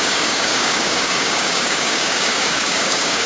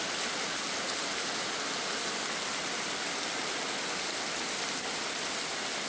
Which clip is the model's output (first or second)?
first